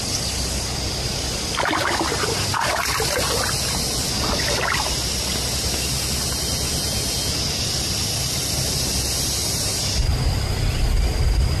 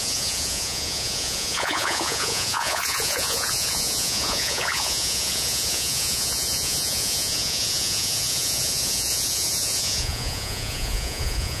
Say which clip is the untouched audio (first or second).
first